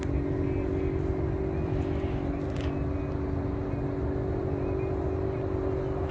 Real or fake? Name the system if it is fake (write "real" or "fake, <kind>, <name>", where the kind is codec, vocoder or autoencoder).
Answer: real